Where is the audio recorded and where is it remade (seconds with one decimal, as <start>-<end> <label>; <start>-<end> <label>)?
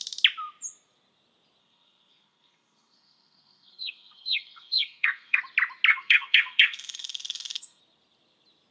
0.0-1.6 recorded; 1.6-5.4 remade; 5.4-5.9 recorded; 5.9-7.8 remade; 7.8-8.7 recorded